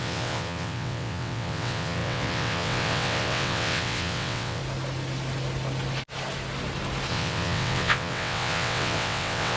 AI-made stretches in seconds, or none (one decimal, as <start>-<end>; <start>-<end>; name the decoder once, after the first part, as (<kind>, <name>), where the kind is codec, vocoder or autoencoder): 0.0-4.6 (vocoder, WaveNeXt); 7.1-9.6